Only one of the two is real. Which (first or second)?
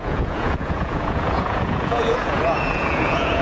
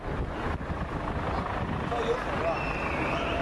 second